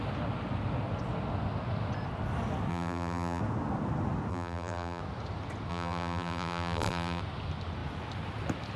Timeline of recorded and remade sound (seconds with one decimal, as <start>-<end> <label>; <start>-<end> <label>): 0.0-2.7 recorded; 2.7-3.4 remade; 3.4-4.3 recorded; 4.3-5.0 remade; 5.0-5.7 recorded; 5.7-7.2 remade; 7.2-8.8 recorded